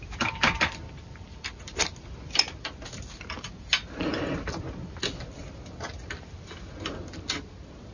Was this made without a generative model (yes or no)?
yes